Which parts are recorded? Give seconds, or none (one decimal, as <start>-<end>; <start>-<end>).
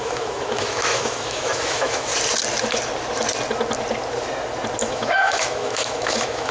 2.1-4.8